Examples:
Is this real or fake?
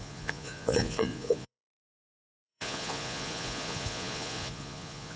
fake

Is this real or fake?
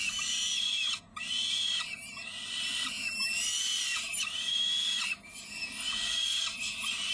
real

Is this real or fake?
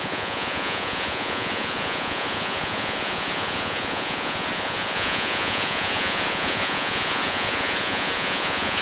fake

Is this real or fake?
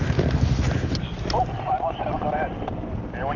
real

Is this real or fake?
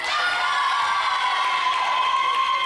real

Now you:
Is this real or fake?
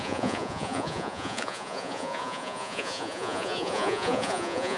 fake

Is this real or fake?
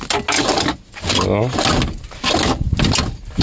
real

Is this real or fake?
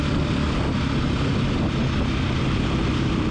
real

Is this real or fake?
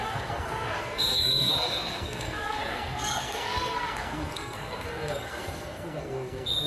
fake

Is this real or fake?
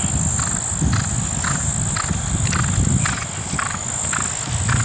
real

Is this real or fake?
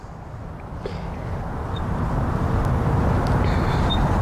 fake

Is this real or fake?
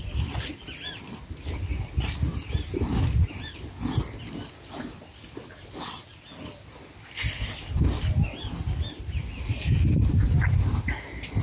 real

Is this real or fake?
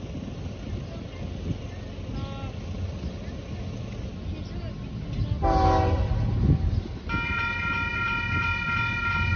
real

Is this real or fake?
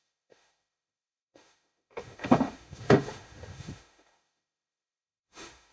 fake